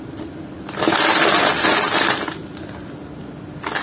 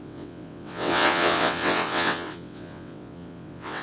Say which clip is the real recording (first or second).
first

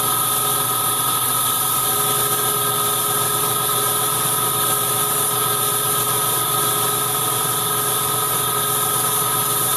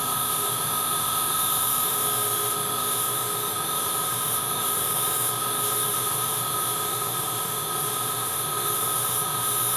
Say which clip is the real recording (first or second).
first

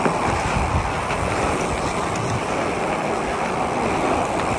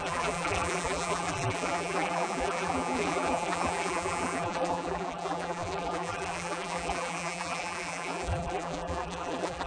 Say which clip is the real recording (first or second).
first